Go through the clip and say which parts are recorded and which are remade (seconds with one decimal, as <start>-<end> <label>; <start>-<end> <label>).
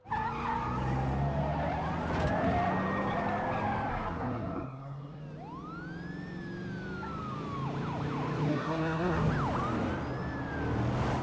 0.0-3.9 recorded; 3.9-5.2 remade; 5.2-8.5 recorded; 8.5-9.3 remade; 9.3-11.2 recorded